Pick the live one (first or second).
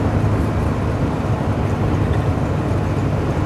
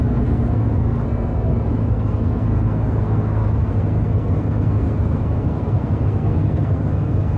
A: first